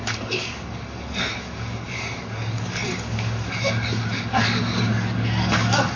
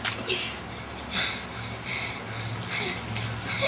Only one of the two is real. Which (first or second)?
second